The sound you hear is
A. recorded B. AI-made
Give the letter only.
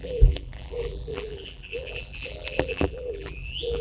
B